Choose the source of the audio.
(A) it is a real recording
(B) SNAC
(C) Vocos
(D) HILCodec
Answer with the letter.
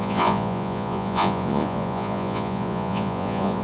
C